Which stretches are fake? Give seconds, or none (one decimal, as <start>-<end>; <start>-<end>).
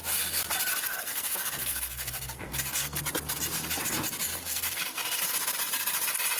0.9-3.0; 4.3-5.2